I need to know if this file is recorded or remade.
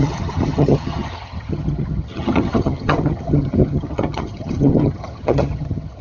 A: remade